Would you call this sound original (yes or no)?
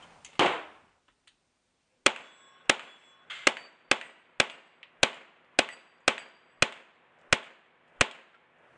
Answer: yes